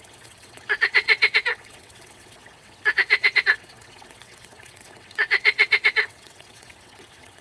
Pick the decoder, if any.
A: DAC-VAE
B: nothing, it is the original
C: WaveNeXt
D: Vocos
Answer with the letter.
C